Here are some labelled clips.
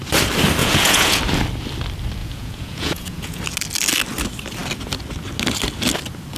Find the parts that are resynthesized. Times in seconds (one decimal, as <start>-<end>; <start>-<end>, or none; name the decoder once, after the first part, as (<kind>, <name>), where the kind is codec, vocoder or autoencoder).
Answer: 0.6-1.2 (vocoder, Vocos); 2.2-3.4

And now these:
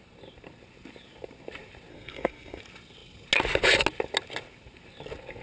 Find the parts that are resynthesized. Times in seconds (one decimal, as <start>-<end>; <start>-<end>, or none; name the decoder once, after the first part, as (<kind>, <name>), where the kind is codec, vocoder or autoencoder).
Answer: 1.9-2.6 (codec, SNAC)

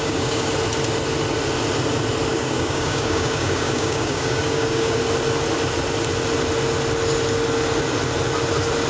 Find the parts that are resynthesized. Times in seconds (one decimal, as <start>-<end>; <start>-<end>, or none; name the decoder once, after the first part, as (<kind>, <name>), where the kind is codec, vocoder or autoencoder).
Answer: 0.0-0.5 (codec, DAC); 2.3-5.0

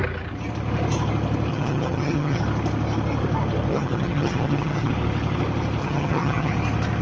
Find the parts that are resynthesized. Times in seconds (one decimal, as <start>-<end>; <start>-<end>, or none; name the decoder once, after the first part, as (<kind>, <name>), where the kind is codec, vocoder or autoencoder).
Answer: 1.5-2.4 (vocoder, HiFi-GAN); 3.7-4.9; 5.8-6.5

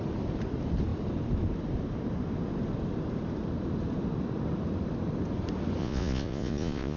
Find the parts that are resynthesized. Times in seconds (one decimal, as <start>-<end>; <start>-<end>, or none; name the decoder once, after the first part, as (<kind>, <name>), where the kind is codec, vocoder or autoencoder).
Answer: 5.8-7.0 (vocoder, Vocos)